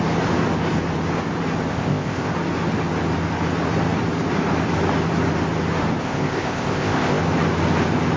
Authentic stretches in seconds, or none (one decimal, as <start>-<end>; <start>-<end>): 0.0-1.7; 2.3-6.0; 7.2-8.2